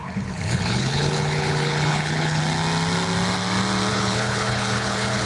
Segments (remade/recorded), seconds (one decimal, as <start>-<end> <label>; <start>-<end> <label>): 0.0-2.4 remade; 2.4-3.9 recorded; 3.9-5.3 remade